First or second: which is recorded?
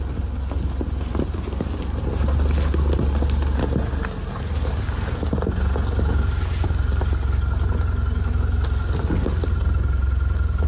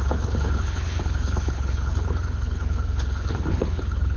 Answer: first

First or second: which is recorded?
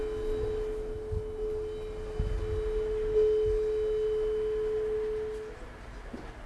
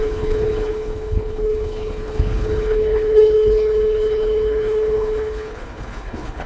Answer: first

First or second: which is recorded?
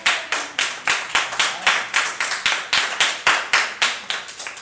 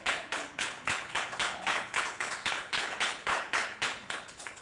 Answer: first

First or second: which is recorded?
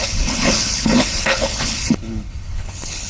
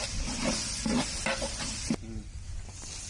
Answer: second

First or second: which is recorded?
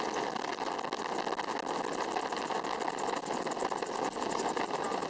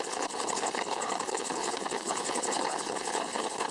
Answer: first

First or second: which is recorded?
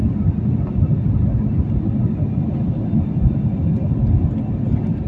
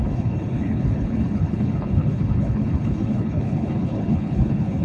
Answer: first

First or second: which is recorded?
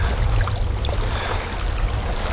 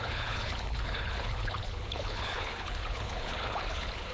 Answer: first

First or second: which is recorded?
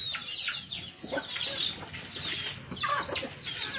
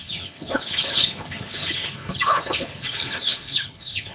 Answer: first